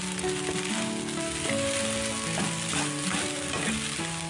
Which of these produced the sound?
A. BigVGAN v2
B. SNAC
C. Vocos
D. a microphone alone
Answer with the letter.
D